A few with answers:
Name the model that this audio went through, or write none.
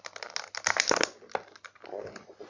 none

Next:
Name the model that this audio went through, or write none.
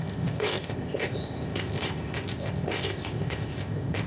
codec, ZipCodec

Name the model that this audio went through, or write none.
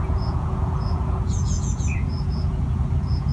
vocoder, Vocos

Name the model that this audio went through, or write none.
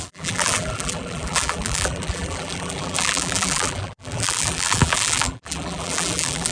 vocoder, BigVGAN v2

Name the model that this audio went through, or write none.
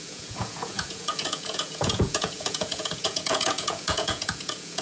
vocoder, Vocos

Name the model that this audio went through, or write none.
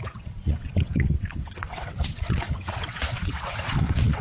vocoder, WaveNeXt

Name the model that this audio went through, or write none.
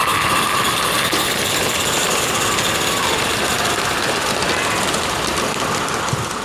none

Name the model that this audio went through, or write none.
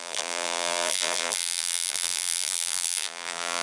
vocoder, BigVGAN v2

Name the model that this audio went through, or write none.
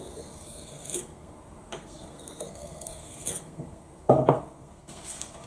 codec, SNAC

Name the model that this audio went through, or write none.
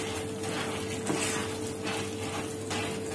none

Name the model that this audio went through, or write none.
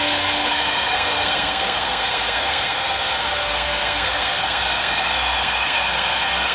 codec, SNAC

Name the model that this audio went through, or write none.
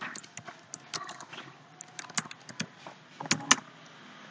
none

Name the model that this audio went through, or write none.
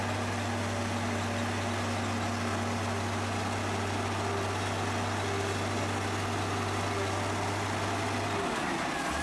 none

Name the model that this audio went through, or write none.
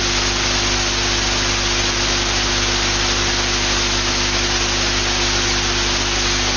none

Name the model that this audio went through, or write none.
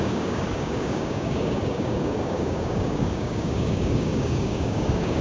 codec, DAC